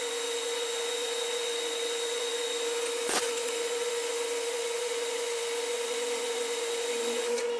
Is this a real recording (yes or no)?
no